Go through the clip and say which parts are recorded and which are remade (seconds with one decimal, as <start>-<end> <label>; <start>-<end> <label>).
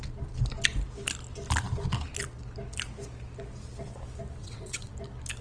0.0-4.4 recorded; 4.4-4.9 remade; 4.9-5.4 recorded